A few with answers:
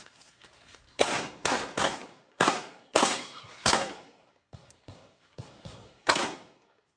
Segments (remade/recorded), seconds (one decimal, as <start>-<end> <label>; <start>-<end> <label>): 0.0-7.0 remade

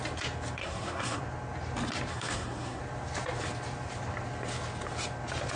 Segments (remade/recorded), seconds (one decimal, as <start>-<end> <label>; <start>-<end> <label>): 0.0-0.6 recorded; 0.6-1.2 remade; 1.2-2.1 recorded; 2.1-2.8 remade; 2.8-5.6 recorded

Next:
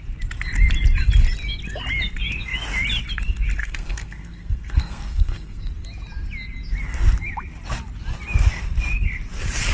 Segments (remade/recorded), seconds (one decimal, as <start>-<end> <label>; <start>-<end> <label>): 0.0-3.6 recorded; 3.6-5.7 remade; 5.7-9.7 recorded

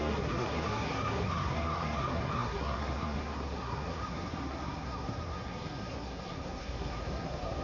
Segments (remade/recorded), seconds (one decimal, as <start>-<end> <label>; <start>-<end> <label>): 0.0-7.6 remade

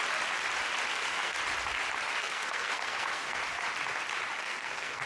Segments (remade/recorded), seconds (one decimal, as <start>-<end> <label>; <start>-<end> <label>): 0.0-0.9 recorded; 0.9-1.4 remade; 1.4-2.2 recorded; 2.2-3.4 remade; 3.4-4.4 recorded; 4.4-5.1 remade

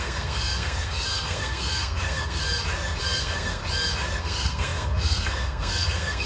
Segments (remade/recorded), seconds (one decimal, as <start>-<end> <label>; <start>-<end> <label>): 0.0-2.4 remade; 2.4-3.0 recorded; 3.0-3.6 remade; 3.6-4.2 recorded; 4.2-6.3 remade